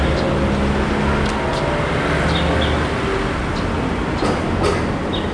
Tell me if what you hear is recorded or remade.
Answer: recorded